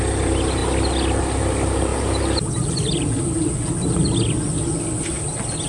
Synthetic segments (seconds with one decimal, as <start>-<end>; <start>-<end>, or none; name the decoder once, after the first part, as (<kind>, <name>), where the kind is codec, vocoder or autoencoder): none